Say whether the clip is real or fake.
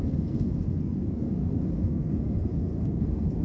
fake